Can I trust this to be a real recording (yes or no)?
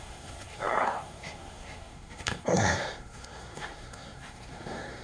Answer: no